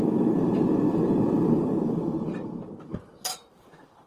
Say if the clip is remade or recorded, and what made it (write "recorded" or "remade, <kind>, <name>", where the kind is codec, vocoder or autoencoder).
remade, vocoder, BigVGAN v2